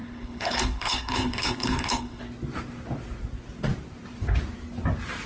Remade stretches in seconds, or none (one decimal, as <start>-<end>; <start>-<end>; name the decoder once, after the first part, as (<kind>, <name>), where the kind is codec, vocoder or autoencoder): 0.0-2.2 (codec, HILCodec)